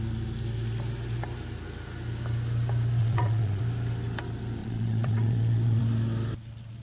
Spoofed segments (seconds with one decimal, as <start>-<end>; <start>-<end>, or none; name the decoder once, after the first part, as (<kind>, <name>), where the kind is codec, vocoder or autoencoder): 3.0-3.6 (vocoder, Vocos); 4.6-5.8